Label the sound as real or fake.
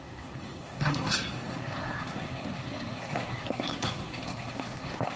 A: fake